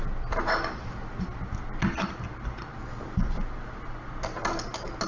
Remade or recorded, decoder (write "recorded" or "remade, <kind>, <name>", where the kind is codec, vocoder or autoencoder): recorded